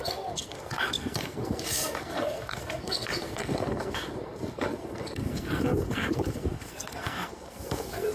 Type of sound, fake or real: fake